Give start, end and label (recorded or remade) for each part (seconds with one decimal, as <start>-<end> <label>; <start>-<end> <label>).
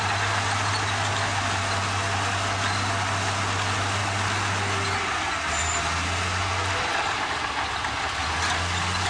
0.0-9.1 recorded